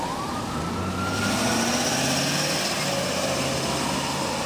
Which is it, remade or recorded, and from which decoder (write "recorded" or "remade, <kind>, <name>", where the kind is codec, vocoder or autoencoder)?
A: recorded